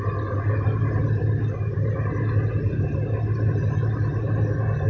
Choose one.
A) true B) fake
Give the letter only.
A